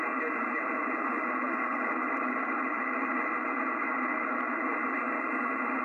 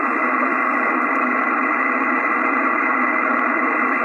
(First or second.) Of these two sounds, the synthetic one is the second